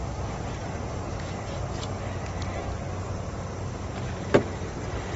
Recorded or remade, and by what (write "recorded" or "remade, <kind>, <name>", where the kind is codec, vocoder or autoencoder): recorded